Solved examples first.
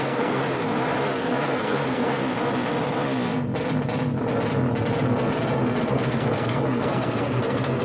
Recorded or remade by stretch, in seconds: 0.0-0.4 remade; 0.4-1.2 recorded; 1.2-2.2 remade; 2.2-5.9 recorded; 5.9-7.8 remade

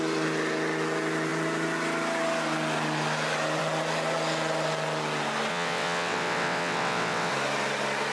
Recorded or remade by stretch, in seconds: 0.0-5.5 recorded; 5.5-7.3 remade; 7.3-8.1 recorded